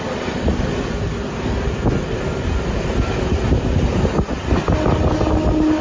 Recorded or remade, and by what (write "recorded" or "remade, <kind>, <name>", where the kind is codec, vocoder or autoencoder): recorded